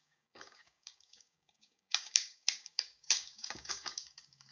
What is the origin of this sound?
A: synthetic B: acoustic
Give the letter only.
A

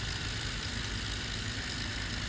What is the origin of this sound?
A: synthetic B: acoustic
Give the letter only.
B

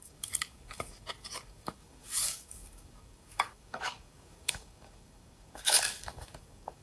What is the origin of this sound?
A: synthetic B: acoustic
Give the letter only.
A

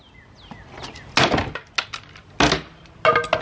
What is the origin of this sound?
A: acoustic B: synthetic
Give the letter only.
A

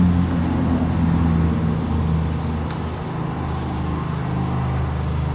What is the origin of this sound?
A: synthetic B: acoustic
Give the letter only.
B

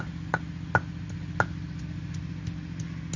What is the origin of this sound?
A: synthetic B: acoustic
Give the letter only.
B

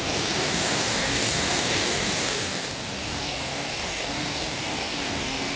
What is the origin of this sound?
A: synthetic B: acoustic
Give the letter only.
A